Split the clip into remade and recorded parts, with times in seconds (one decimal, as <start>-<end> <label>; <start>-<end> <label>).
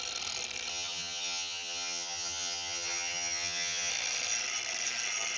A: 0.0-0.7 recorded; 0.7-3.9 remade; 3.9-5.4 recorded